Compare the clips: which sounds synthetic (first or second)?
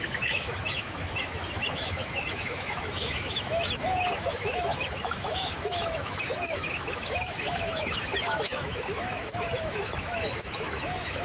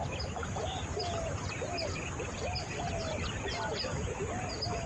first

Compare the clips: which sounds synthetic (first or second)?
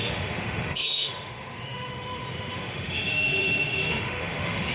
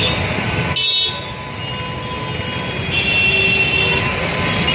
first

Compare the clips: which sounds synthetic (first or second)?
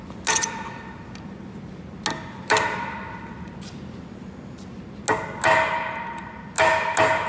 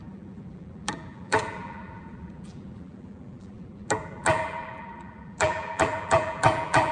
second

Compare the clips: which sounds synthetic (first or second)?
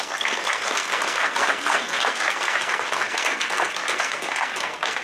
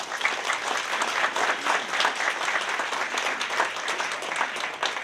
first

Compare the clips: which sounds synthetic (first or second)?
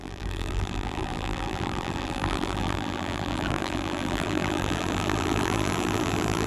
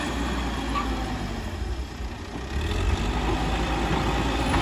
first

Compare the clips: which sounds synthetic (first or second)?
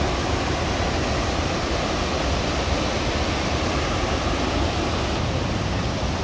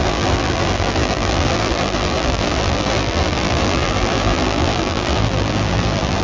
second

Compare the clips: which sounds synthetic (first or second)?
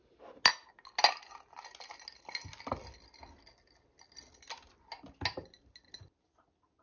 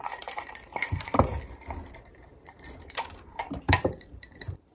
second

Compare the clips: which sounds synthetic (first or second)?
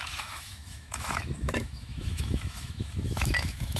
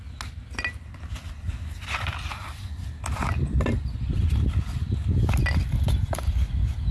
first